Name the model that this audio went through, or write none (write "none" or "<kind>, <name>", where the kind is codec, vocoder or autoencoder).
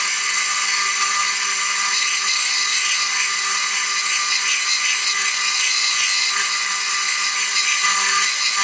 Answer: vocoder, Vocos